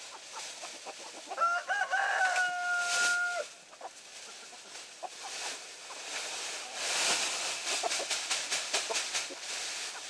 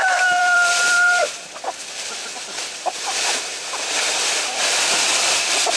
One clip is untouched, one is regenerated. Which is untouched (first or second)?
first